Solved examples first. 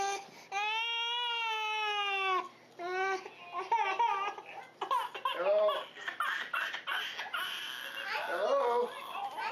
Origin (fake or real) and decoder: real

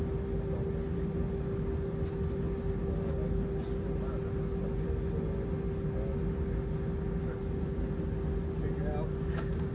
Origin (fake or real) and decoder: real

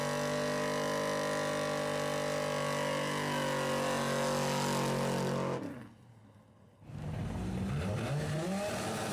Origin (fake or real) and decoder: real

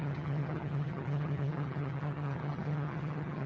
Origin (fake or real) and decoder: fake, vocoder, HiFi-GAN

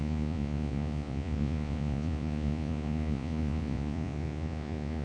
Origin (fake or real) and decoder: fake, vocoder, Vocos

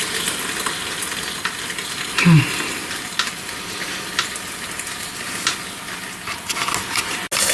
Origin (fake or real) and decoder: real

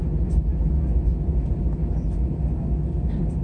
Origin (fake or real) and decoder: real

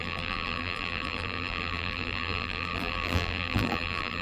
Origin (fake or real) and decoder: fake, vocoder, BigVGAN v2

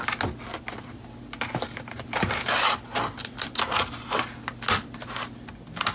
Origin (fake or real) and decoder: real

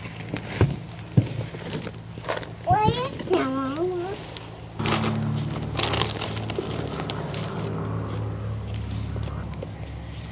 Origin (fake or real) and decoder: real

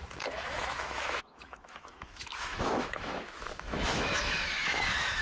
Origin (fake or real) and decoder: fake, autoencoder, DAC-VAE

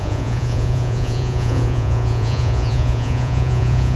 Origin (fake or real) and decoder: fake, vocoder, Vocos